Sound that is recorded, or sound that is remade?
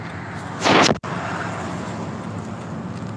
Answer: recorded